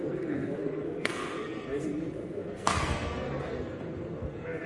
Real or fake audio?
fake